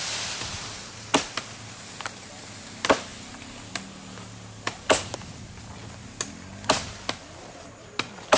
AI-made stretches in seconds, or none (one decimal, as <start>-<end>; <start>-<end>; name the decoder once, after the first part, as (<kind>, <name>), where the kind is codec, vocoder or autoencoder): none